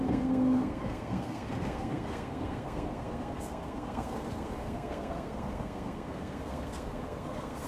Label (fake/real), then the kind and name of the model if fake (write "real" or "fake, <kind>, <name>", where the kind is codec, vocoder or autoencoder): fake, codec, SNAC